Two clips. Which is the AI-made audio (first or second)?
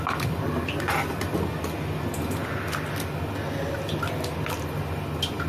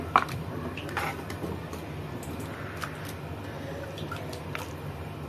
second